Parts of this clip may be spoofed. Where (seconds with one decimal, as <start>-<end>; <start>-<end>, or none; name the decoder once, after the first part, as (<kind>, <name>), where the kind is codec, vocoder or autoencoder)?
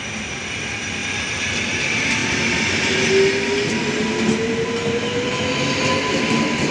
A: none